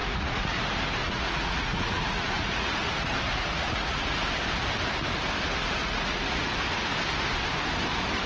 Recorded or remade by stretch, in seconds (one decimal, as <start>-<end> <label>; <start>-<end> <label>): 0.0-0.6 remade; 0.6-1.0 recorded; 1.0-4.2 remade; 4.2-5.8 recorded; 5.8-6.5 remade; 6.5-8.3 recorded